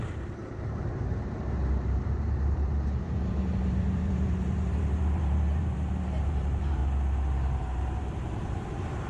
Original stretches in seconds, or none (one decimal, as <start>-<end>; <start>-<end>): 6.8-7.6